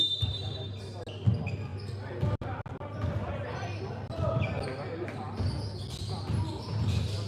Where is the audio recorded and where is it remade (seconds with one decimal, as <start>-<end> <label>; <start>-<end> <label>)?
0.0-7.3 recorded

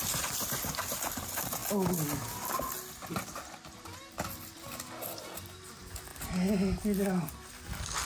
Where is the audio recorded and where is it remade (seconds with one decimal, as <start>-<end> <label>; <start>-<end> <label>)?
0.0-8.1 recorded

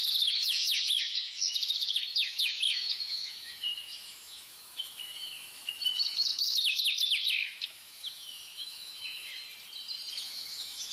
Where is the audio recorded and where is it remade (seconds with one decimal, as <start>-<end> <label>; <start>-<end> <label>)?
0.0-9.3 remade; 9.3-10.1 recorded; 10.1-10.9 remade